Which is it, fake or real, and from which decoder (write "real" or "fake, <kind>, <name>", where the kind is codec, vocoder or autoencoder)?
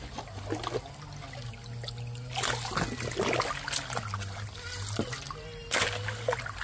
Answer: real